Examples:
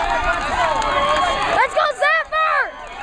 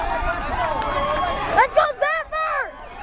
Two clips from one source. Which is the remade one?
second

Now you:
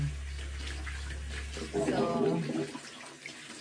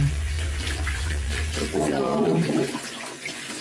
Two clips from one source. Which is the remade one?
second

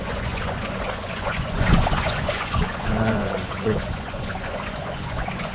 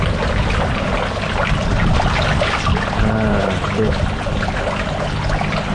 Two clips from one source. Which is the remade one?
first